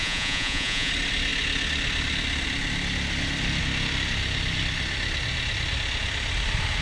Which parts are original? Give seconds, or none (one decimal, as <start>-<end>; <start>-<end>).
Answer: 0.9-6.8